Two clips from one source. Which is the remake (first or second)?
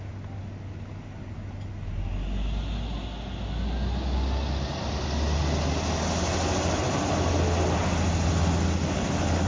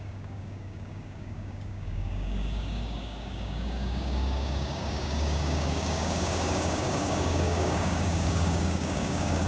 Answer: second